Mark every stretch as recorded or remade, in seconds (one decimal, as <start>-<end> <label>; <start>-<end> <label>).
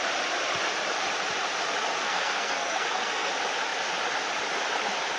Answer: 0.0-2.0 recorded; 2.0-3.3 remade; 3.3-5.2 recorded